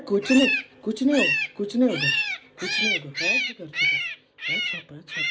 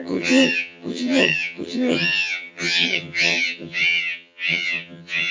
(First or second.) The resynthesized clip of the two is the second